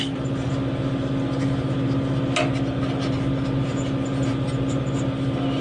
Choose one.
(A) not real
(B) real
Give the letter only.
B